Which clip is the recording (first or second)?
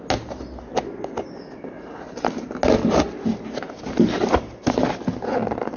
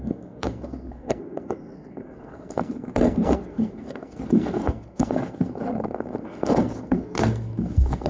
first